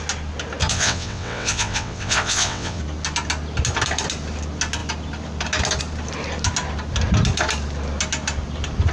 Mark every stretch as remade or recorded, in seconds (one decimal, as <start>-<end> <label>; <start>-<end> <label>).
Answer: 0.0-0.7 recorded; 0.7-2.8 remade; 2.8-8.9 recorded

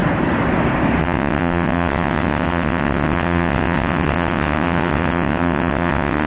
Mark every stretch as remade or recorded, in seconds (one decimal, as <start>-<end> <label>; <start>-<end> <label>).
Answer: 0.0-1.0 recorded; 1.0-6.3 remade

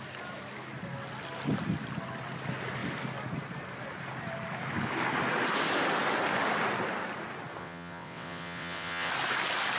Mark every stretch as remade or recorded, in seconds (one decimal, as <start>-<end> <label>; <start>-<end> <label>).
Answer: 0.0-7.6 recorded; 7.6-9.1 remade; 9.1-9.8 recorded

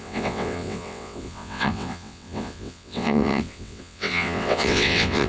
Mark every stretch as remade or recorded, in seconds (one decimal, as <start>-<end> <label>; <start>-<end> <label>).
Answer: 0.0-5.3 remade